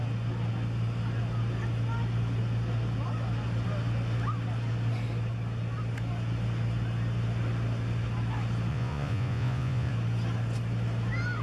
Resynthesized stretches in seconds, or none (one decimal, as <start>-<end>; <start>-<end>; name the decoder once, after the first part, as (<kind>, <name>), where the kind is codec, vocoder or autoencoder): 8.7-9.9 (vocoder, Vocos)